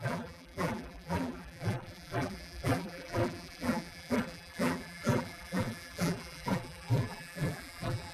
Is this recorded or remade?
remade